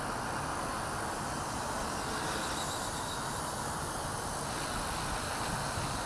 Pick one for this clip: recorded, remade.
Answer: recorded